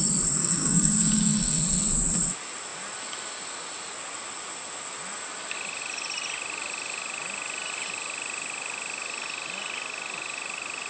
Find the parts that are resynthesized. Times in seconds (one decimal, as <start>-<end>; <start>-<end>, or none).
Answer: 0.4-1.6